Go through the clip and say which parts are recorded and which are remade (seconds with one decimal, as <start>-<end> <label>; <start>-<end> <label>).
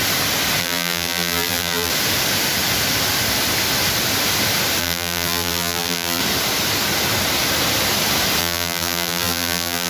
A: 0.0-0.6 recorded; 0.6-1.9 remade; 1.9-4.8 recorded; 4.8-6.2 remade; 6.2-8.4 recorded; 8.4-9.9 remade